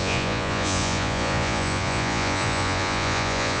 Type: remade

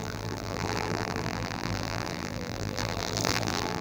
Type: remade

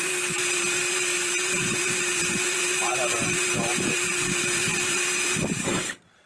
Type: remade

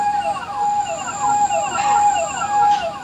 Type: recorded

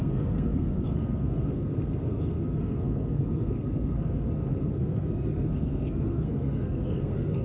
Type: remade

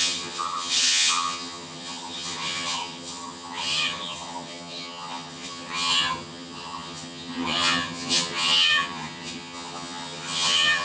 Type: remade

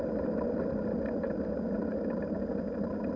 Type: recorded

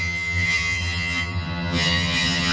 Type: remade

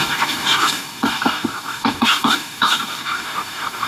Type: remade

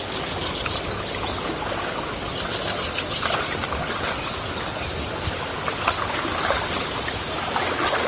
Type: recorded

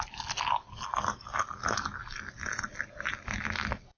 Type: recorded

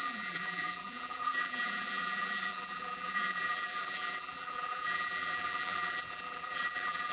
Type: remade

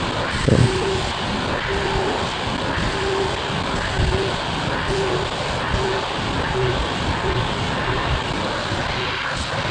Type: recorded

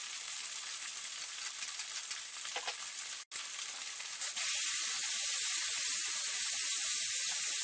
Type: recorded